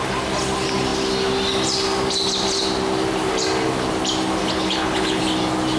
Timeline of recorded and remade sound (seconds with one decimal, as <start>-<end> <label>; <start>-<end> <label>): 0.0-4.4 recorded; 4.4-5.2 remade; 5.2-5.8 recorded